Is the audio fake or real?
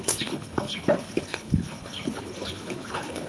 fake